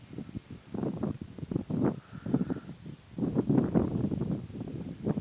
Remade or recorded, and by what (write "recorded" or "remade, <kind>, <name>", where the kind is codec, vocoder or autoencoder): remade, vocoder, BigVGAN v2